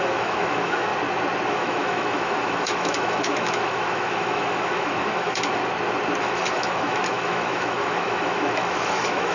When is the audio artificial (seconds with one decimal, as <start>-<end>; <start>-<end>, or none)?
0.0-0.9; 1.5-5.6; 6.2-9.3